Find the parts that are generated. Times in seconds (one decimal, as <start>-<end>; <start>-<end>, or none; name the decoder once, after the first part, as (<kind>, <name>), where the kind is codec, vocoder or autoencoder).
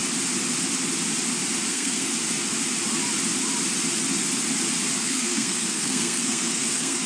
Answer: 1.7-2.1 (codec, SNAC); 5.0-7.1